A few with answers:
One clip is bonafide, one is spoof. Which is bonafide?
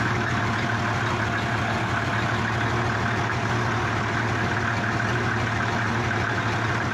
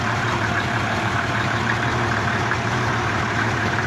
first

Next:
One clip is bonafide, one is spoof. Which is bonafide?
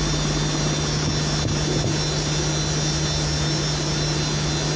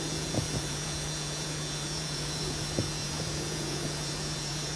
first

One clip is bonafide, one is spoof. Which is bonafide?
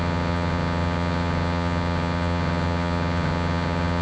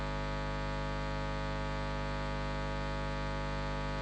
second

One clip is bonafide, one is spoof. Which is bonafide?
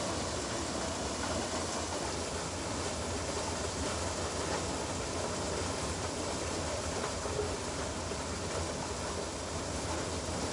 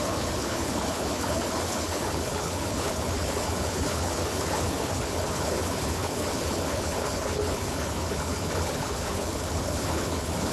first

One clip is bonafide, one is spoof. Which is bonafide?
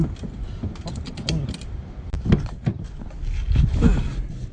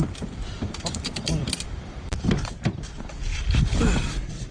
first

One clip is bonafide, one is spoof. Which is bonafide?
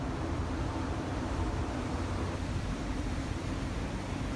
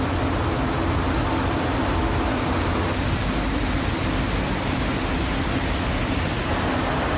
second